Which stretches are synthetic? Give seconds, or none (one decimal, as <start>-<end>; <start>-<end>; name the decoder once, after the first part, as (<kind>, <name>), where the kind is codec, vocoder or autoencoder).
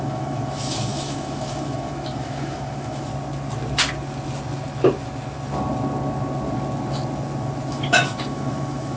0.0-3.1 (autoencoder, DAC-VAE); 7.7-9.0